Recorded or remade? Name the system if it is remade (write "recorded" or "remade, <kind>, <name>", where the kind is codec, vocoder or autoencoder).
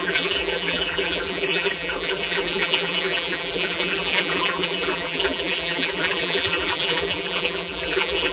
remade, vocoder, BigVGAN v2